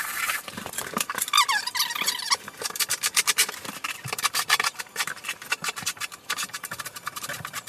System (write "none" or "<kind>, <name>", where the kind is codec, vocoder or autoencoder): vocoder, BigVGAN v2